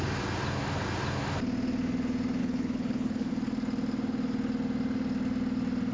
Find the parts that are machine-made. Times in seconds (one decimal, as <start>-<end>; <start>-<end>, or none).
2.4-3.3